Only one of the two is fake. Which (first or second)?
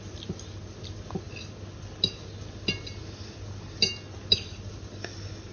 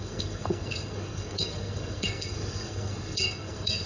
second